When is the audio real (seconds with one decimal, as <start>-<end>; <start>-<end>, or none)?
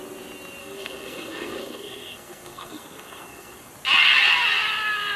0.0-0.6; 3.7-5.2